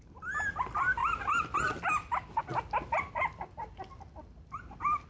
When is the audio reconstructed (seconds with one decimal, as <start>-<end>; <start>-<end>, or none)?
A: none

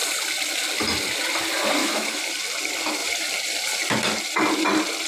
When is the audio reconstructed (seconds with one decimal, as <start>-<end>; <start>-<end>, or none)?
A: 1.8-2.3

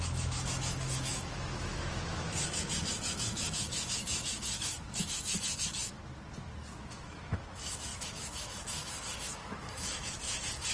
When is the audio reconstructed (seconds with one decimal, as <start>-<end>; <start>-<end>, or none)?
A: 0.0-6.0; 6.7-10.7

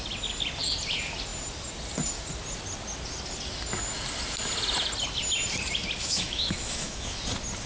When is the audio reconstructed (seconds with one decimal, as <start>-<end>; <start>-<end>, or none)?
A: 6.0-7.2